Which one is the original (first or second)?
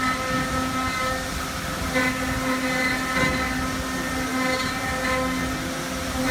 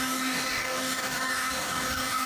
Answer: first